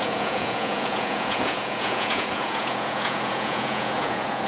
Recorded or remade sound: remade